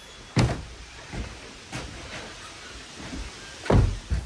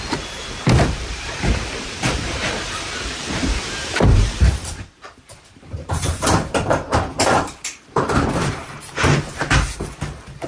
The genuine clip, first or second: first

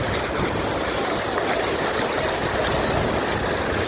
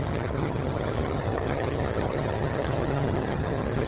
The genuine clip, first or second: first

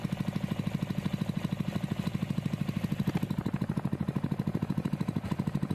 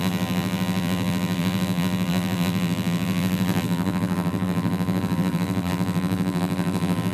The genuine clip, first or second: first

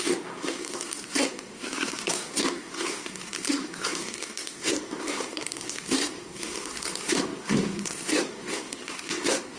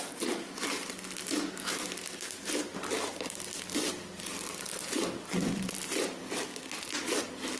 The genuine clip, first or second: second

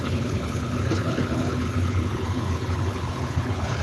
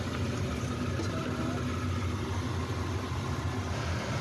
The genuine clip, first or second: second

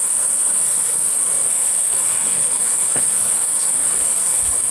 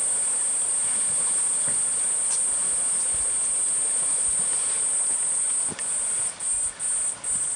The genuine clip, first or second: second